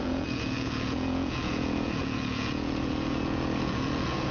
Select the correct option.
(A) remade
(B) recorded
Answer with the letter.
A